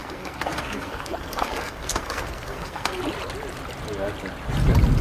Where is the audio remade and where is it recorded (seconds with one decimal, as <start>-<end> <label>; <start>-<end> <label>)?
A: 0.0-3.0 remade; 3.0-5.0 recorded